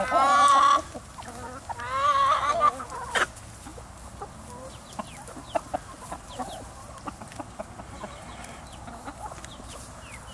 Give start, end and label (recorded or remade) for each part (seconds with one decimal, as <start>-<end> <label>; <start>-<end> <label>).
0.0-10.3 recorded